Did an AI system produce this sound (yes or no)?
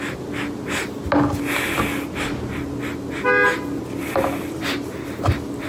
no